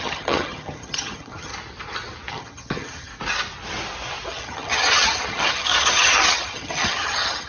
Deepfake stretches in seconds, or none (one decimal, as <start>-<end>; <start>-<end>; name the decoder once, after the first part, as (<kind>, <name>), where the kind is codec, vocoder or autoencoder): 0.0-1.5 (vocoder, HiFi-GAN); 2.3-3.1; 4.3-7.5